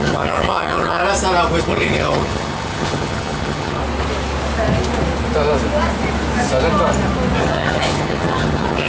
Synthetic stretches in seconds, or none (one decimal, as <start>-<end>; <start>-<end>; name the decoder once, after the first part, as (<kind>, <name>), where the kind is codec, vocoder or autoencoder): 0.0-1.0 (vocoder, HiFi-GAN); 1.6-3.8; 7.4-8.9